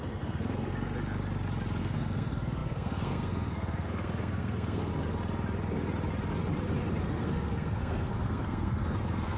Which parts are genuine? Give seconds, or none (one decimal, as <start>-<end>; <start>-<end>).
0.7-1.8; 4.9-7.0